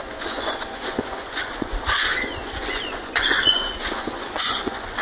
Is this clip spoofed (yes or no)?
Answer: yes